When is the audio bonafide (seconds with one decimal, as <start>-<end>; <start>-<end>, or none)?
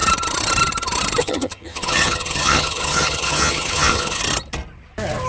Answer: 0.0-1.2; 4.2-5.3